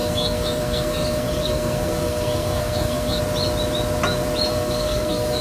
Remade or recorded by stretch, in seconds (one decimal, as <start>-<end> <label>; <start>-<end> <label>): 0.0-3.2 remade; 3.2-4.5 recorded; 4.5-5.4 remade

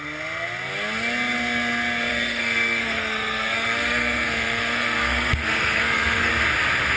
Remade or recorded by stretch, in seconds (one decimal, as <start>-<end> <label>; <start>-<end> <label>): 0.0-2.1 recorded; 2.1-6.3 remade; 6.3-7.0 recorded

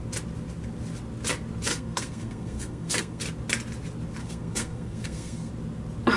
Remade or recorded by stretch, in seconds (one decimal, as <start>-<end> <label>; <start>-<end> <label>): 0.0-1.7 recorded; 1.7-3.2 remade; 3.2-4.2 recorded; 4.2-5.5 remade; 5.5-6.2 recorded

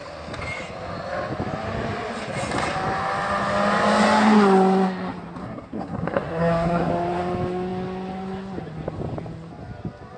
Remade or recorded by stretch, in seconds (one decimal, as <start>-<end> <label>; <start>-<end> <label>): 0.0-5.4 recorded; 5.4-6.9 remade; 6.9-10.2 recorded